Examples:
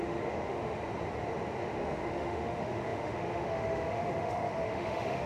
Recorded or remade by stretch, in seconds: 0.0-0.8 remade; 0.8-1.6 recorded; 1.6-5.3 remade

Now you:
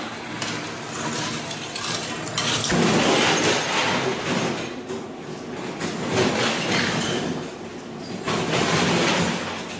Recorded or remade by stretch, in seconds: 0.0-9.8 recorded

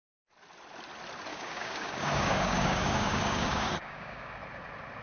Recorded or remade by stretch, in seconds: 0.0-1.3 recorded; 1.3-4.3 remade; 4.3-5.0 recorded

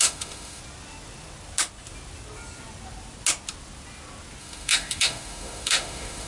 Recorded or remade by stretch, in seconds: 0.0-0.6 remade; 0.6-4.4 recorded; 4.4-6.3 remade

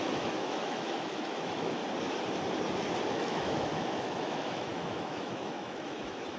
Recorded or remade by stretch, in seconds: 0.0-1.8 remade; 1.8-3.1 recorded; 3.1-6.4 remade